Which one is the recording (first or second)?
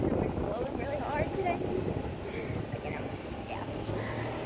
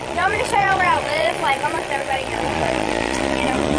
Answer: first